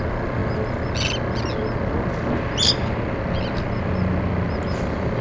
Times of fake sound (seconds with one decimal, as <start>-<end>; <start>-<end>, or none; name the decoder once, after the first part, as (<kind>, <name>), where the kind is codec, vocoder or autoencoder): none